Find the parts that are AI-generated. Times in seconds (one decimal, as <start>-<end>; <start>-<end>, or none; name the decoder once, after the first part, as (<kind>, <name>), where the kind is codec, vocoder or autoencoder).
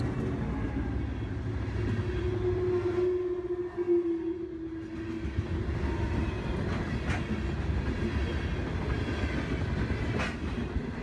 8.2-8.8 (vocoder, BigVGAN v2)